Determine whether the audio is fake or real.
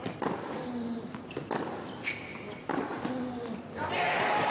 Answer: real